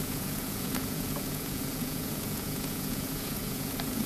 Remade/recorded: remade